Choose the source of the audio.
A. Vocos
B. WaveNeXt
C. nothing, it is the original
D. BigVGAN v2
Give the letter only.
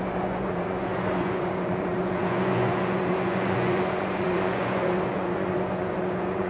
A